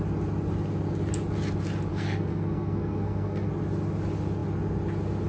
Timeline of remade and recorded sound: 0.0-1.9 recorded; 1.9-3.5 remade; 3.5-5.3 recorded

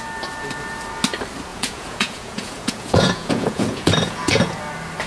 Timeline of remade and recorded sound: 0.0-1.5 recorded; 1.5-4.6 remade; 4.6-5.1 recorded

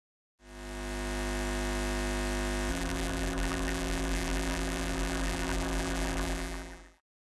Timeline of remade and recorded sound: 0.0-2.7 recorded; 2.7-7.3 remade